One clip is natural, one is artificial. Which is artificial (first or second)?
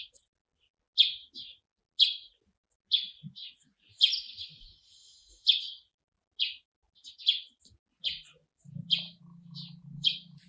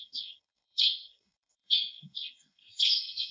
second